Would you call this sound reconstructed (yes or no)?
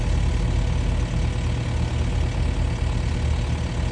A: no